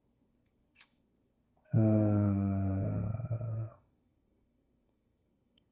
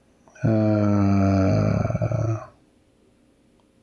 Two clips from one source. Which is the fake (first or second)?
first